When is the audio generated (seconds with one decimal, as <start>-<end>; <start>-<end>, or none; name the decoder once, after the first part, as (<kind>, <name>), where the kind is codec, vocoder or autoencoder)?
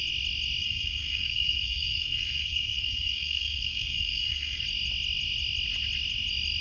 0.6-4.6 (codec, SNAC)